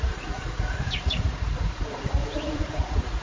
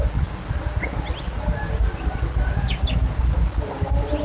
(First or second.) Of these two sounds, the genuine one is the second